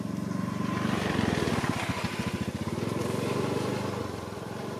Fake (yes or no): no